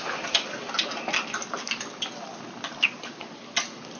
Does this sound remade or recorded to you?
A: recorded